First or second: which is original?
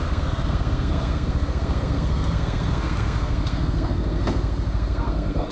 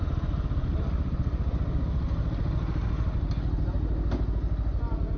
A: second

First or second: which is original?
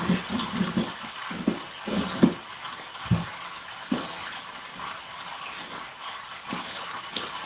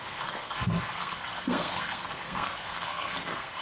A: first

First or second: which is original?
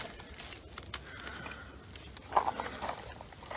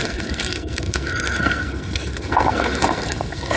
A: first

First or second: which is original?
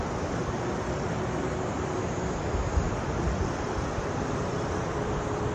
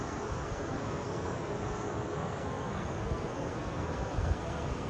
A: first